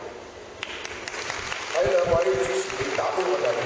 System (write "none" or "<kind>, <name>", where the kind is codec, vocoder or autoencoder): none